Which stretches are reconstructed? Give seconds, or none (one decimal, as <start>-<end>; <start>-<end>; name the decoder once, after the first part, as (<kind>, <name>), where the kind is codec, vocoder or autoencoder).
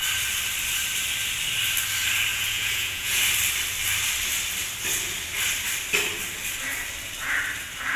2.3-3.2 (vocoder, Vocos)